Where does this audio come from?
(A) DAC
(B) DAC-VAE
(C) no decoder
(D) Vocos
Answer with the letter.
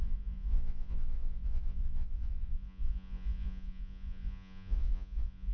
D